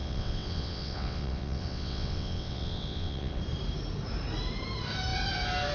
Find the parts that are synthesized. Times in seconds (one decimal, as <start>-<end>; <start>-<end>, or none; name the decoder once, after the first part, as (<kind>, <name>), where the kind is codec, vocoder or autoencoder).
0.0-3.4 (vocoder, WaveNeXt)